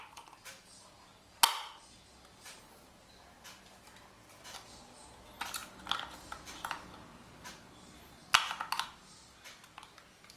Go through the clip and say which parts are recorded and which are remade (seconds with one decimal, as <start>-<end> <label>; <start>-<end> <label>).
0.0-10.4 recorded